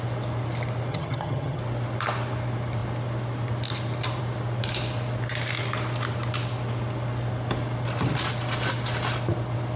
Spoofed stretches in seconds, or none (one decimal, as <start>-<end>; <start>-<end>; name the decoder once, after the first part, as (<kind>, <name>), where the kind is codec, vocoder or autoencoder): 0.9-1.6 (vocoder, HiFi-GAN)